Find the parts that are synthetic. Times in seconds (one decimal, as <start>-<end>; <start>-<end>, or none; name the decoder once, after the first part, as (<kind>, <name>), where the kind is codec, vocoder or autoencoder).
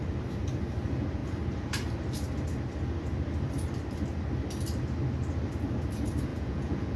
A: 6.3-7.0 (vocoder, Vocos)